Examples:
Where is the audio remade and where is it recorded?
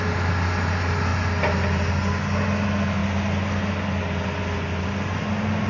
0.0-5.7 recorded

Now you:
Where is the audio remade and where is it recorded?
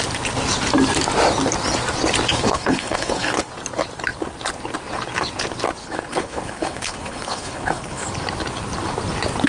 0.0-2.3 recorded; 2.3-3.5 remade; 3.5-5.8 recorded; 5.8-8.1 remade; 8.1-9.5 recorded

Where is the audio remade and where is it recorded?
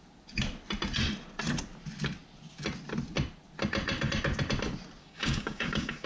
0.0-5.0 recorded; 5.0-6.1 remade